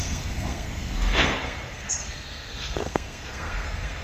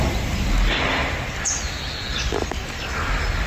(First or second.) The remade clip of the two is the first